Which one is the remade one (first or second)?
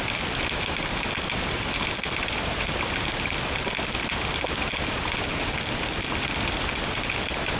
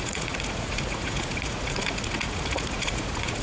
second